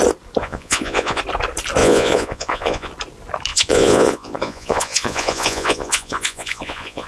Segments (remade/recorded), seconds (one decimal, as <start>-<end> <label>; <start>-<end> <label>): 0.0-0.4 recorded; 0.4-1.2 remade; 1.2-1.8 recorded; 1.8-2.9 remade; 2.9-3.5 recorded; 3.5-7.1 remade